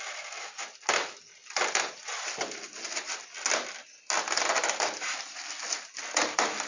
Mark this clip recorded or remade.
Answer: recorded